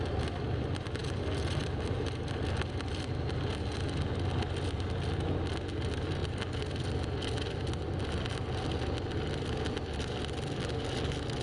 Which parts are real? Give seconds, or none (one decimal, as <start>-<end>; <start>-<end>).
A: 0.0-11.4